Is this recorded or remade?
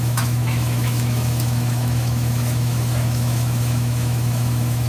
remade